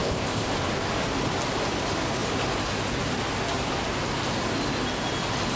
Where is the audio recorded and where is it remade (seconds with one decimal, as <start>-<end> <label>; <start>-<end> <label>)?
0.0-0.5 remade; 0.5-5.6 recorded